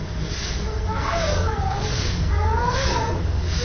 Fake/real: fake